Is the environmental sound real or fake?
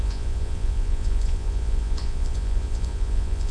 fake